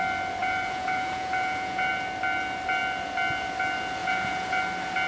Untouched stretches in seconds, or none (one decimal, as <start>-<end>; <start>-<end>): 0.0-0.4; 1.9-4.0; 4.6-5.1